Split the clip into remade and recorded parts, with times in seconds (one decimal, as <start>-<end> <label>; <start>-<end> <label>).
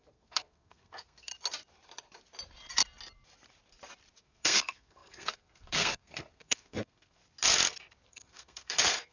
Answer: 0.0-1.3 remade; 1.3-4.2 recorded; 4.2-7.2 remade; 7.2-8.1 recorded; 8.1-9.1 remade